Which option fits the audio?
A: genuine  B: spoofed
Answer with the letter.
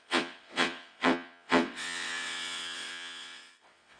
B